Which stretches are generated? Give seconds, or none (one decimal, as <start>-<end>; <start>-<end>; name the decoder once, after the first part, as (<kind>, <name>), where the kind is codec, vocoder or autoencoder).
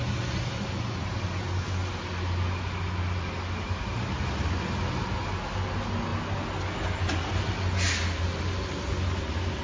none